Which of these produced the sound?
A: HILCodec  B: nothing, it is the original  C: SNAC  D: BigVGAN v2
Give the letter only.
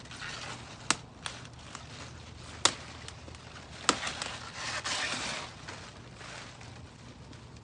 B